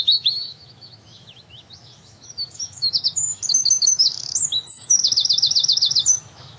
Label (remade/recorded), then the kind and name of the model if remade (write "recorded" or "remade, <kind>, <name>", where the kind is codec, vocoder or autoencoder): remade, autoencoder, DAC-VAE